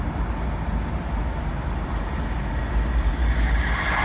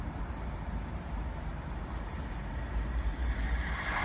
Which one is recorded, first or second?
first